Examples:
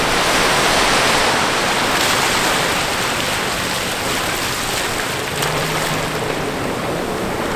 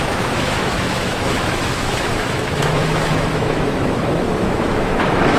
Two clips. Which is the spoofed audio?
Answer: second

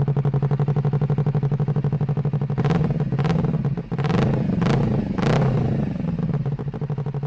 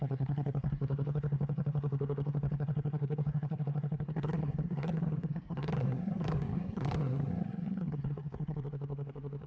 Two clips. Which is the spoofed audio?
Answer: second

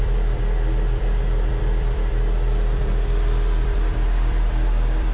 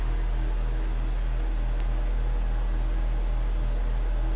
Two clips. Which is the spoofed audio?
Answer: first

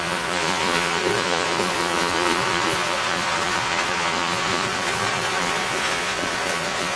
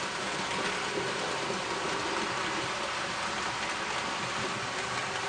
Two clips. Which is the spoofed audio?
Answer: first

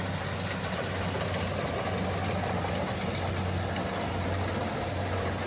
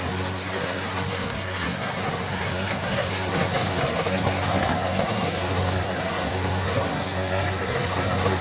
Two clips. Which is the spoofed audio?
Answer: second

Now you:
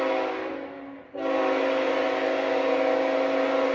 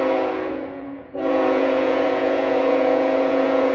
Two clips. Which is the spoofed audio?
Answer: second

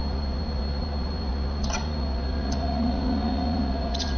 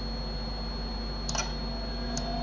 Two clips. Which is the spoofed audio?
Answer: first